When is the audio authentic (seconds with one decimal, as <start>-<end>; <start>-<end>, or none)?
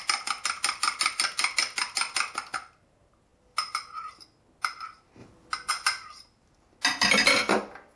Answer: 0.0-8.0